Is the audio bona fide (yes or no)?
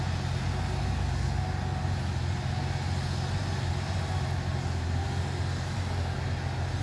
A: yes